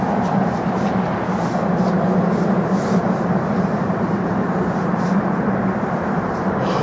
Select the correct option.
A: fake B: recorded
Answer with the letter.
A